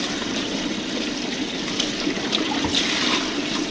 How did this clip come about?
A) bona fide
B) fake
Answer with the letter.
A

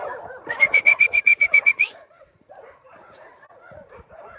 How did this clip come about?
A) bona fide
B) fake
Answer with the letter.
B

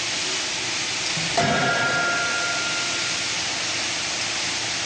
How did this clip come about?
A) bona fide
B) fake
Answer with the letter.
A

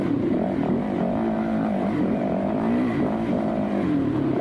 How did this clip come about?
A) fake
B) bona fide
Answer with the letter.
A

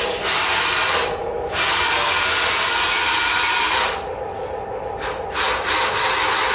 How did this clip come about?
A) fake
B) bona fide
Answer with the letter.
B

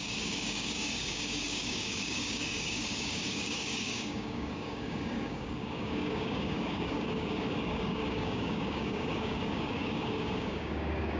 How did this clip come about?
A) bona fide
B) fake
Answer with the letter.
B